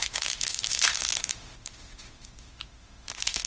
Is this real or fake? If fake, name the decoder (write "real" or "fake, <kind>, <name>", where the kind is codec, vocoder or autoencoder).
fake, autoencoder, DAC-VAE